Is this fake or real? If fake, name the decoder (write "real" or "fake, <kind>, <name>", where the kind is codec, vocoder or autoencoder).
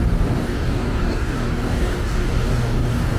fake, codec, DAC